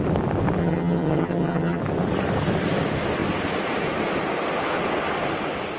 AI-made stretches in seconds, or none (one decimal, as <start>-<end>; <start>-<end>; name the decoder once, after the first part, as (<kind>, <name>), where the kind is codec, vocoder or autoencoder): 0.6-1.8 (vocoder, HiFi-GAN)

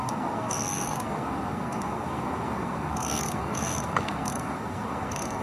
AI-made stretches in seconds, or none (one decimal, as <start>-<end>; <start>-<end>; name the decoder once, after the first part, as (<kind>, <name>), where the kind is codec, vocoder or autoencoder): 0.0-5.4 (codec, SNAC)